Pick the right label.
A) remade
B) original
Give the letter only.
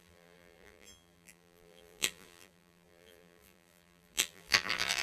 A